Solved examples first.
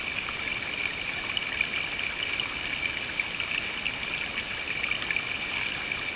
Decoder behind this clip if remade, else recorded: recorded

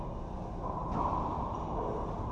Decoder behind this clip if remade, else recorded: recorded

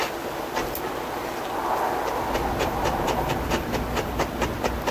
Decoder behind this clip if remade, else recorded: recorded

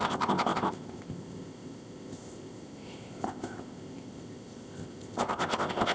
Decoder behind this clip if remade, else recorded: remade, codec, ZipCodec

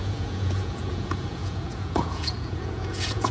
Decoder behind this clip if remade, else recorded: remade, vocoder, Vocos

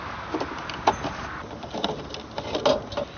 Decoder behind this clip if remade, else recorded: recorded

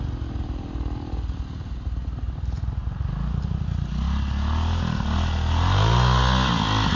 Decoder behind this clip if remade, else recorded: recorded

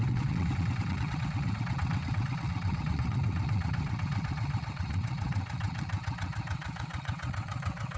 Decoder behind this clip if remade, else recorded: remade, vocoder, WaveNeXt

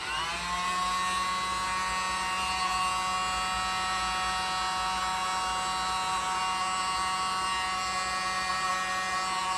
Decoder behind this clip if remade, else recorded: recorded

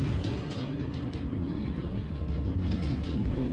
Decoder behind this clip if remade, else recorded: remade, codec, SNAC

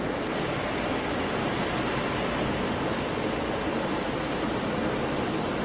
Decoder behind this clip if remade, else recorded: recorded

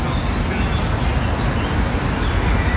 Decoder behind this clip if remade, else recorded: recorded